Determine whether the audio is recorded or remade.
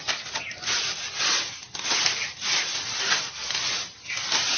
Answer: recorded